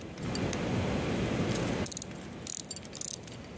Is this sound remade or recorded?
recorded